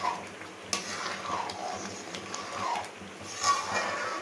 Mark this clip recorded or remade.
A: recorded